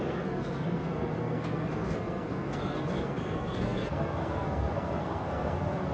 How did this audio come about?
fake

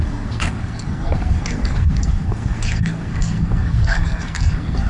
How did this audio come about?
fake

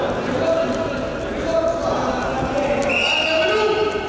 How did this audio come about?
real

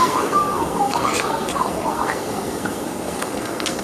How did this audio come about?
fake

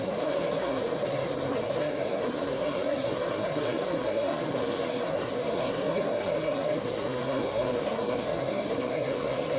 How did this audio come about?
fake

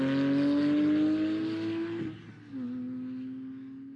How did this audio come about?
real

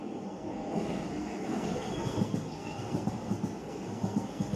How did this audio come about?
fake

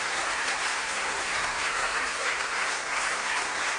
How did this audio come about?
fake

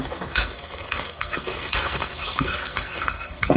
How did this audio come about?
fake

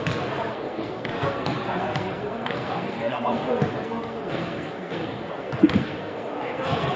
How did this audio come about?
fake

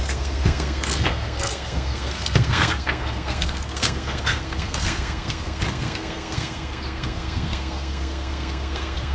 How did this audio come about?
fake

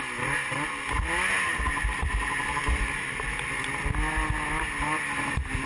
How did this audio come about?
real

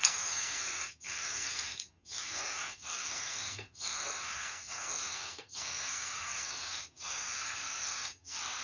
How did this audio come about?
fake